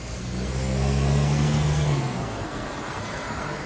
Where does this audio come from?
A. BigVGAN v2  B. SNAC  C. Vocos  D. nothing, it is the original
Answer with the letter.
B